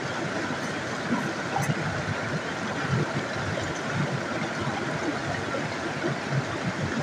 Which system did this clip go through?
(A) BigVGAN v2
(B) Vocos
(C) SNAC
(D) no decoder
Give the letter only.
D